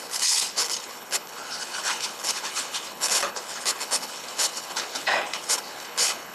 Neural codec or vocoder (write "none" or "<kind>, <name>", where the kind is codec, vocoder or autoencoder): codec, HILCodec